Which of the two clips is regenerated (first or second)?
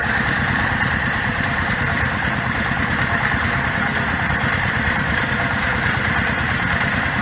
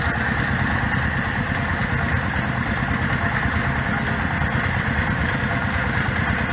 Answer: first